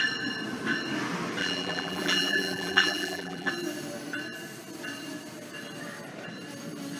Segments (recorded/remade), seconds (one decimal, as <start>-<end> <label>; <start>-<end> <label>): 0.0-1.4 recorded; 1.4-3.5 remade; 3.5-7.0 recorded